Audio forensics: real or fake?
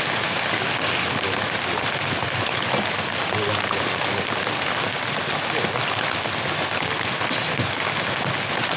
real